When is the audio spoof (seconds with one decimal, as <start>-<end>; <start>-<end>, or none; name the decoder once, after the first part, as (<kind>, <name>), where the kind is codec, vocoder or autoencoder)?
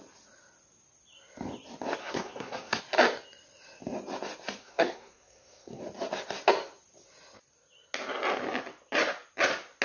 2.0-2.8 (codec, SNAC); 4.6-5.8